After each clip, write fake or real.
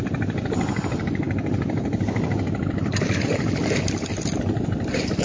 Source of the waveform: real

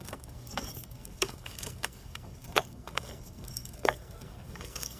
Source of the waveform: fake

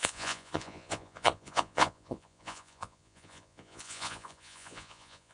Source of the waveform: fake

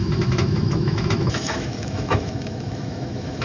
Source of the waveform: fake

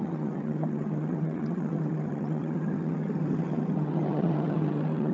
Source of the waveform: fake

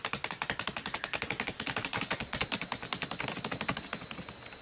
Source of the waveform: real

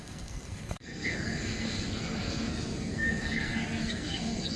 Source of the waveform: fake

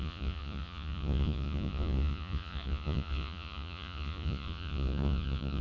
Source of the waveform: fake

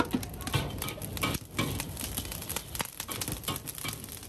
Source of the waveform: real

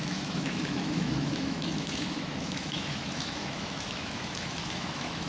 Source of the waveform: fake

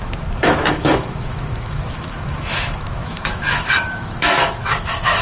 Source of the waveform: fake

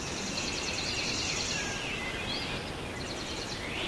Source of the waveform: fake